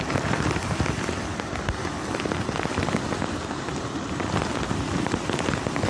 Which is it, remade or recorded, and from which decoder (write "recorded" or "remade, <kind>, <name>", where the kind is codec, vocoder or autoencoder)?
recorded